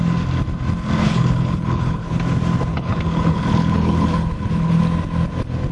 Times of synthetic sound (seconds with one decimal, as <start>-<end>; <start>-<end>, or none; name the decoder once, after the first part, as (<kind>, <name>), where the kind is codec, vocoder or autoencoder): 1.0-2.2 (codec, HILCodec); 2.7-4.8